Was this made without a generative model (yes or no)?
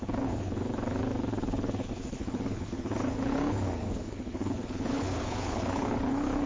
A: no